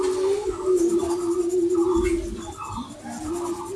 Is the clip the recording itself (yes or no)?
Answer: yes